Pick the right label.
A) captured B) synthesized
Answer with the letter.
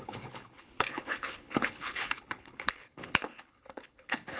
B